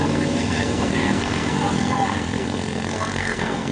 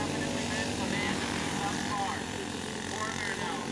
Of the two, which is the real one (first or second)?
second